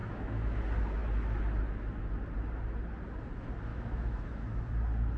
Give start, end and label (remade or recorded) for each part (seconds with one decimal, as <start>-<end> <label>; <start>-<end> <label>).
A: 0.0-0.6 remade; 0.6-3.7 recorded; 3.7-4.6 remade; 4.6-5.2 recorded